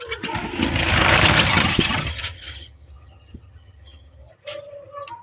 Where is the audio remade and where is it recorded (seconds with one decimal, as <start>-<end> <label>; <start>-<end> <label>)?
0.0-1.5 recorded; 1.5-4.3 remade; 4.3-5.2 recorded